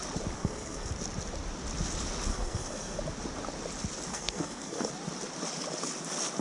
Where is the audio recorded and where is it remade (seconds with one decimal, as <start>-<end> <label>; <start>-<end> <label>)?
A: 0.0-0.4 recorded; 0.4-0.9 remade; 0.9-2.3 recorded; 2.3-3.0 remade; 3.0-4.1 recorded; 4.1-4.9 remade; 4.9-6.4 recorded